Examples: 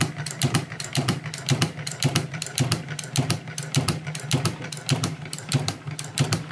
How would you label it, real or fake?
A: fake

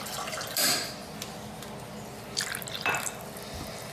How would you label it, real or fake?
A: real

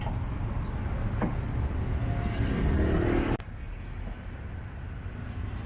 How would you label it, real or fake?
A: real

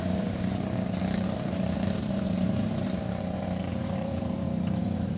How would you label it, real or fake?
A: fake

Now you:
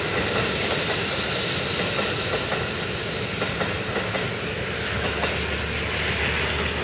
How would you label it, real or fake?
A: real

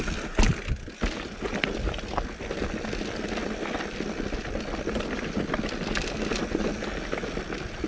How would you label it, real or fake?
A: real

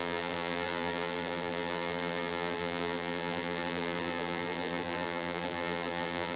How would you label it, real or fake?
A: fake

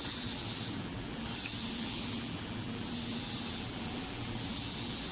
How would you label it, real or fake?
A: fake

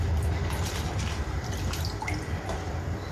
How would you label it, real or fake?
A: fake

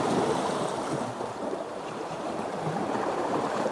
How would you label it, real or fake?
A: fake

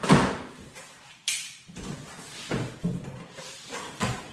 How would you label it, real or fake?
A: fake